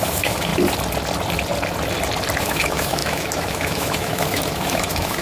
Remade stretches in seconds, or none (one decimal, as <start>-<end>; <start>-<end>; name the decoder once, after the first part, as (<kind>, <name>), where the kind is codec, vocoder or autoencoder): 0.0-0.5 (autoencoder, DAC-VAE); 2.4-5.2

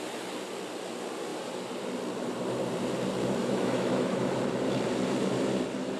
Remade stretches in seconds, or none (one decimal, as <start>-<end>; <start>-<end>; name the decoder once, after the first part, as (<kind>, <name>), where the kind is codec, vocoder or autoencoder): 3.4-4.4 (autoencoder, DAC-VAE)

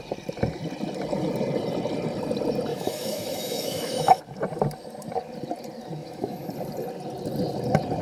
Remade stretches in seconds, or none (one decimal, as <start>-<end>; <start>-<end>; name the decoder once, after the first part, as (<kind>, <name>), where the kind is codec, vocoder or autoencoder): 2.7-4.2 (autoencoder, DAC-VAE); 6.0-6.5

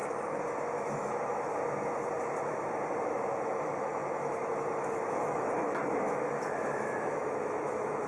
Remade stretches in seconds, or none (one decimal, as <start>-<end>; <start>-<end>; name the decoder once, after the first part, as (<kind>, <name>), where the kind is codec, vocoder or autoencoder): 0.8-1.5 (autoencoder, DAC-VAE); 3.0-8.1